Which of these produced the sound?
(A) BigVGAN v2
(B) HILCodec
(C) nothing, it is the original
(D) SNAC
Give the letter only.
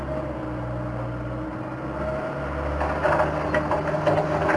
C